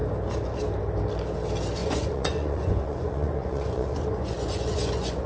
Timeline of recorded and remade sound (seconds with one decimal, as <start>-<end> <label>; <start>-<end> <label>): 0.0-1.8 recorded; 1.8-5.3 remade